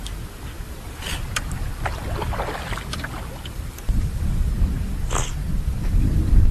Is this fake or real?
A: real